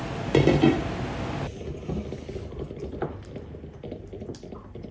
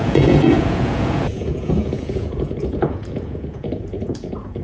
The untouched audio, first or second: first